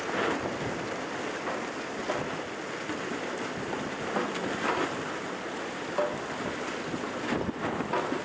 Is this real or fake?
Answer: real